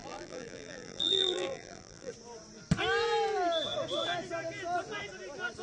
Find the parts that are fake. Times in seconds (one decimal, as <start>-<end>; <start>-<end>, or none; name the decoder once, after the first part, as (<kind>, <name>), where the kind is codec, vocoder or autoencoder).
0.0-2.1 (vocoder, BigVGAN v2)